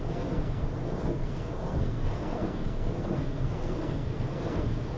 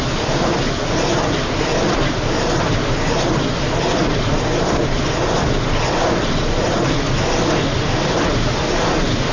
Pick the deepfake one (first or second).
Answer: first